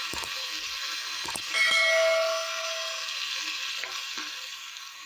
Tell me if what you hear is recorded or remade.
remade